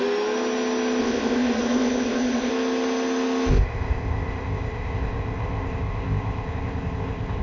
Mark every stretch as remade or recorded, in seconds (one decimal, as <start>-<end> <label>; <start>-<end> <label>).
0.0-1.0 recorded; 1.0-2.5 remade; 2.5-3.5 recorded; 3.5-7.4 remade